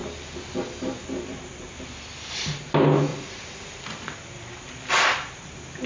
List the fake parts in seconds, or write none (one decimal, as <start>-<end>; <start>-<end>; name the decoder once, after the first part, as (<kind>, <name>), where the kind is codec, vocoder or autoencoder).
0.0-2.3 (vocoder, BigVGAN v2); 3.1-5.9

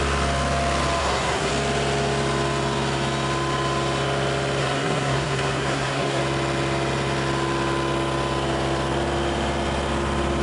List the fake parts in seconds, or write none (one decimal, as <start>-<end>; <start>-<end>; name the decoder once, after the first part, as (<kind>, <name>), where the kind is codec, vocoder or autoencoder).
1.0-1.5 (codec, SNAC); 4.6-6.2

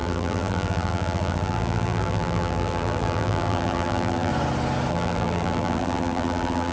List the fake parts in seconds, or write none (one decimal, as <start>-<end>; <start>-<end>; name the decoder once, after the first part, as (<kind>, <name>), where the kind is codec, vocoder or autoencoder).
0.0-4.3 (vocoder, BigVGAN v2); 4.9-6.7

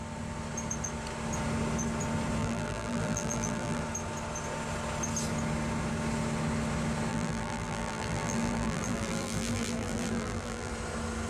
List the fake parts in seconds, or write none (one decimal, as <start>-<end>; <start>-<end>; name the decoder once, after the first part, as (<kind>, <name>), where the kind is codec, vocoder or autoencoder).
2.4-3.8 (vocoder, BigVGAN v2); 7.1-10.7

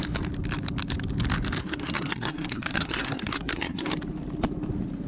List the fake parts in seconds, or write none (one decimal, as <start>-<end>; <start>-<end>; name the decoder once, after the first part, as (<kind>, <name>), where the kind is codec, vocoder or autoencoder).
1.6-3.9 (codec, SNAC)

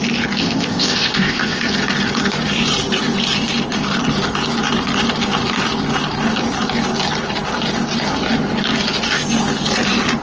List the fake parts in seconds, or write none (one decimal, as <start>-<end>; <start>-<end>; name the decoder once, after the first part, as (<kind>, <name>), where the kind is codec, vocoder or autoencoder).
0.4-1.6 (codec, ZipCodec)

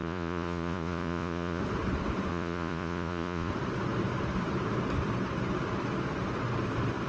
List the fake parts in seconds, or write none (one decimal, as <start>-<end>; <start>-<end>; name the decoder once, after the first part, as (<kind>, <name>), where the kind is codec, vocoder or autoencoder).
0.0-1.6 (vocoder, Vocos); 2.3-3.5

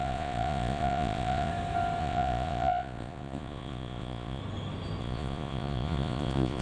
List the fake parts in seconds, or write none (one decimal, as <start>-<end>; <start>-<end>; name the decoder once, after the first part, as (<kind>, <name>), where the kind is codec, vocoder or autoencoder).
0.0-1.5 (vocoder, Vocos); 2.0-4.4; 5.0-6.6